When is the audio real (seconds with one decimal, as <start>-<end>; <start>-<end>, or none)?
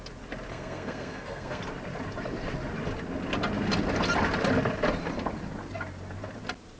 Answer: 0.0-0.5; 1.6-6.8